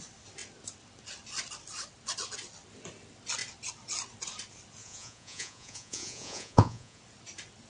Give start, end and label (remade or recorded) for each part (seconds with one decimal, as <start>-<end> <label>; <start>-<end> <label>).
0.0-4.8 recorded; 4.8-7.0 remade; 7.0-7.7 recorded